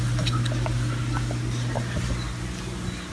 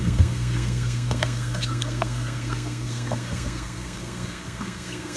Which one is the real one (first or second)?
first